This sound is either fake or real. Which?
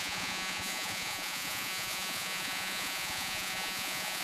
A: fake